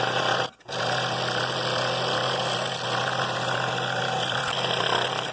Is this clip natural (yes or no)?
yes